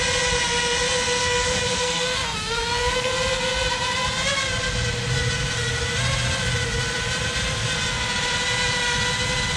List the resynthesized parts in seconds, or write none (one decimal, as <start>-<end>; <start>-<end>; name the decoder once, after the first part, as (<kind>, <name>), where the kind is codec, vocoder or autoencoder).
1.2-3.1 (codec, SNAC)